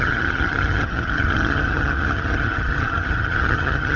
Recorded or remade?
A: remade